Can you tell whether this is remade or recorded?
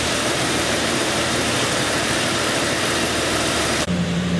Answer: remade